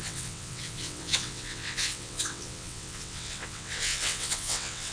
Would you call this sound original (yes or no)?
no